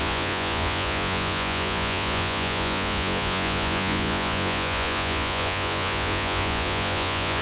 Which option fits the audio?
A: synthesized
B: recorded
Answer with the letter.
A